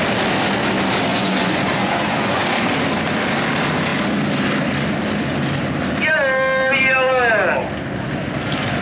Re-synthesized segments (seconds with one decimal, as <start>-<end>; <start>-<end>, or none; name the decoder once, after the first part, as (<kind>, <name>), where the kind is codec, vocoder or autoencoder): 1.1-2.4 (vocoder, Vocos)